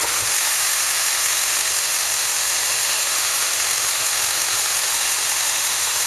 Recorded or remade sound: remade